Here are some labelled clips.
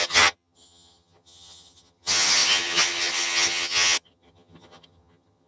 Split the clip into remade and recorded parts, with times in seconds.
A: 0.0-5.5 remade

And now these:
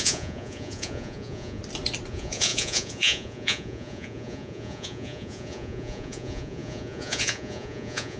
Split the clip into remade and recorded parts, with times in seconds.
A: 0.0-1.6 remade; 1.6-2.1 recorded; 2.1-8.2 remade

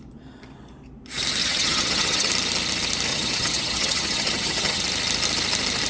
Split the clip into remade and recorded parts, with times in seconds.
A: 0.0-1.4 recorded; 1.4-2.3 remade; 2.3-3.1 recorded; 3.1-4.8 remade; 4.8-5.9 recorded

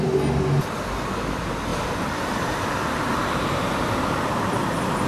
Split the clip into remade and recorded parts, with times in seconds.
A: 0.0-1.7 recorded; 1.7-5.1 remade